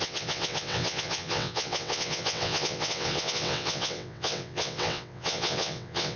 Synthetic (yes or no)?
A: yes